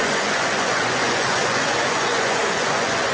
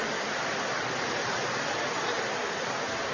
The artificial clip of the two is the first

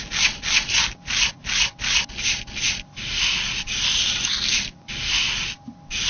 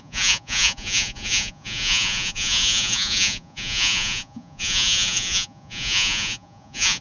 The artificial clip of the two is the second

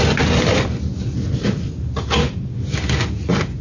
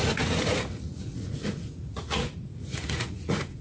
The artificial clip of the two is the second